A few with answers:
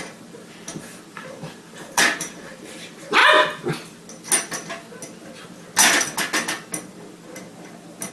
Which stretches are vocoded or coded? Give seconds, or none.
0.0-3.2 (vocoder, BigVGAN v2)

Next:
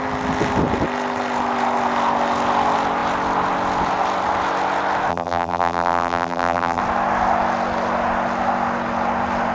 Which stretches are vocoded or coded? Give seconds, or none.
5.1-6.8 (vocoder, BigVGAN v2)